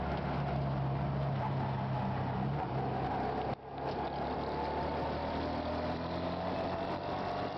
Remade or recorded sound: recorded